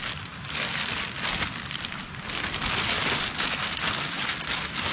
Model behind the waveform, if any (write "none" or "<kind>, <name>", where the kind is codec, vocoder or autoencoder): none